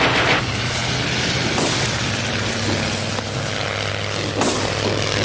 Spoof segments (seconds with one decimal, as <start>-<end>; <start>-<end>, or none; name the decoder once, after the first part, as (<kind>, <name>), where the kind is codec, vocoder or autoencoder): none